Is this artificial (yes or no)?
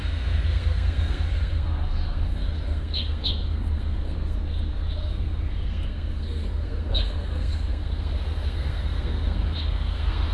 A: yes